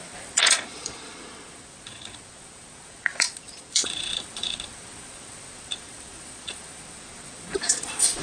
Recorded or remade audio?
remade